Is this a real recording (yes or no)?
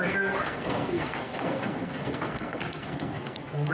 no